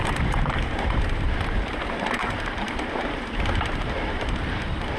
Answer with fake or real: fake